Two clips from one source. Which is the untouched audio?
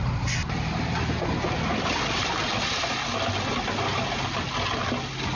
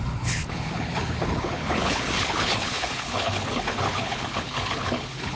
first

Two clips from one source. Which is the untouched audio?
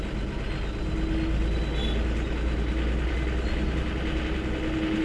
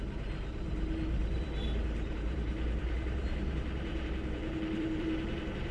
first